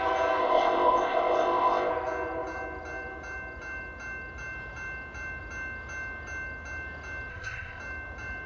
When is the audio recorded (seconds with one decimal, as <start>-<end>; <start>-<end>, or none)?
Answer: 0.0-0.4; 1.9-7.3; 7.8-8.5